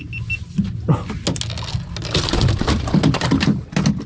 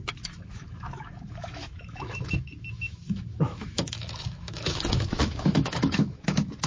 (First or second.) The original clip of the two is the first